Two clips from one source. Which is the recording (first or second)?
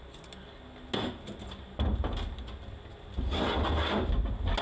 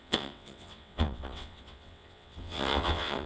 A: first